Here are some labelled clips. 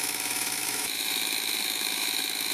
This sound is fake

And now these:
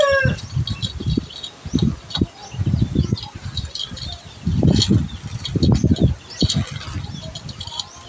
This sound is real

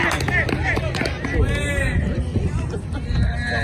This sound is real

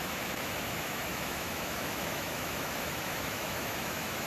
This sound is fake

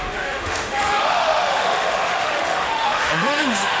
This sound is fake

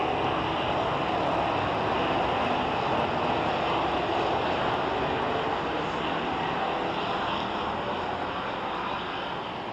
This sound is real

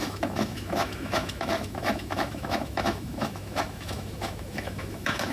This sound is fake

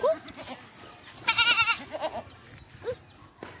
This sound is real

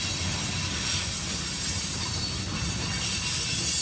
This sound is real